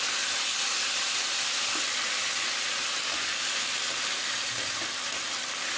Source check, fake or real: real